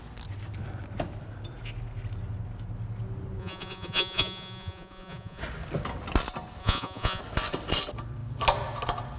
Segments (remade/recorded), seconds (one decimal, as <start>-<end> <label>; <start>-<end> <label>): 0.0-3.4 recorded; 3.4-5.4 remade; 5.4-6.6 recorded; 6.6-7.2 remade; 7.2-9.2 recorded